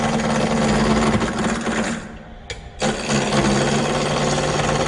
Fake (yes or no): no